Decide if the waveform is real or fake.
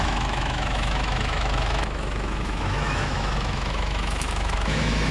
fake